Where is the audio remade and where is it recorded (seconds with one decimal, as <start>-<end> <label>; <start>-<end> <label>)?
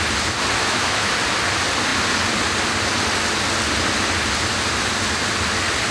0.0-0.6 recorded; 0.6-1.1 remade; 1.1-5.9 recorded